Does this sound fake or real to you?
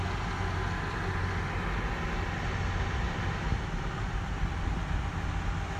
real